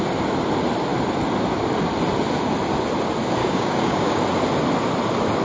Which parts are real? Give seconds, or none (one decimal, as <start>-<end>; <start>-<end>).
0.0-3.4; 4.2-5.4